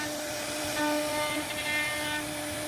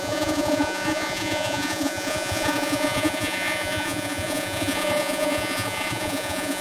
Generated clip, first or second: second